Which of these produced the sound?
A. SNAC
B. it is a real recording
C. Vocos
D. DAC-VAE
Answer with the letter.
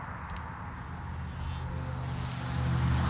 B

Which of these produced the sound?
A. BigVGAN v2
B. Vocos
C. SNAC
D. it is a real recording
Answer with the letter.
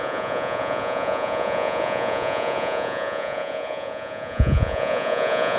B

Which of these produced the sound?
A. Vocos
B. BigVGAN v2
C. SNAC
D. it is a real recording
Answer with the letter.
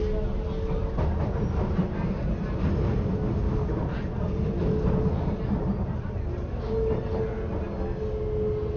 D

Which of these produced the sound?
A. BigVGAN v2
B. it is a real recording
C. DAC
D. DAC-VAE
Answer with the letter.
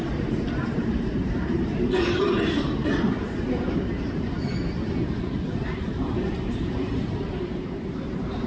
A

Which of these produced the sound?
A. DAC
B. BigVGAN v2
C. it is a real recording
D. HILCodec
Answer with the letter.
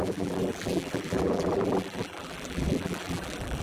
B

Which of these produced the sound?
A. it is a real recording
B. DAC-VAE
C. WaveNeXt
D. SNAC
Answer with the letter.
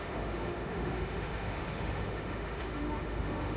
B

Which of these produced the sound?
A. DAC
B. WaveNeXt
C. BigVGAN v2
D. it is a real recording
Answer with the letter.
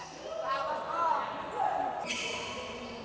D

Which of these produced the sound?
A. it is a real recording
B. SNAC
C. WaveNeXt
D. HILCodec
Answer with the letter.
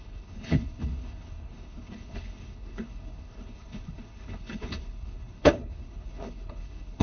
D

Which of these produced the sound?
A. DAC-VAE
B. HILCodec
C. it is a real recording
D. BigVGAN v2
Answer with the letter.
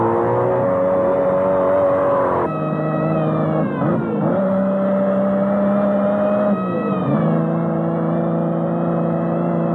C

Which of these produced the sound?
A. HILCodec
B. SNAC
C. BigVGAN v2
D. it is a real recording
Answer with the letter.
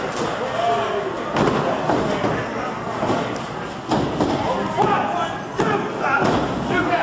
D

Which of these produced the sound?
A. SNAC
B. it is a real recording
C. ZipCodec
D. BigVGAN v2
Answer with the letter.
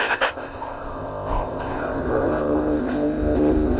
C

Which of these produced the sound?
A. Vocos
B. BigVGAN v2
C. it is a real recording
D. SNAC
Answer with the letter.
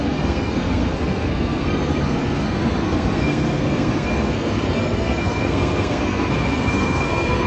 D